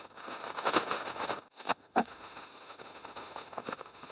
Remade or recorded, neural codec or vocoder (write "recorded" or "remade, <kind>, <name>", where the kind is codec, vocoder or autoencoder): remade, autoencoder, DAC-VAE